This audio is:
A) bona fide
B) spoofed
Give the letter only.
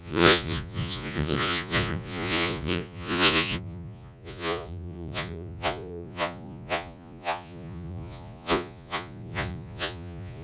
B